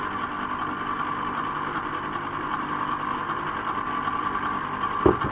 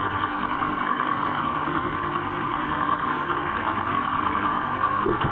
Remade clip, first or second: second